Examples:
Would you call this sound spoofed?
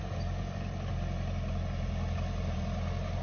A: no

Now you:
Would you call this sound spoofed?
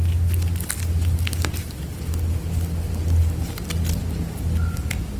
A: no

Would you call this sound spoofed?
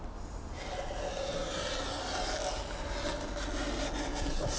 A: no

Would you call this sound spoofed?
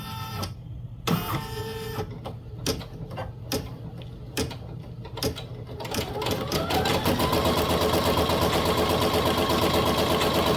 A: no